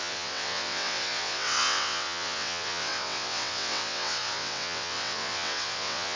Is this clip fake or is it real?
fake